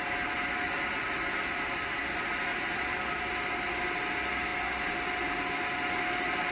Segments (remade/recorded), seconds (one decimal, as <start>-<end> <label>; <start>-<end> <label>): 0.0-2.5 recorded; 2.5-3.7 remade; 3.7-6.5 recorded